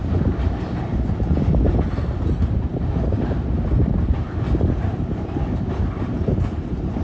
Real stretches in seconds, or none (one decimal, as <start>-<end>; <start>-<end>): 0.0-7.0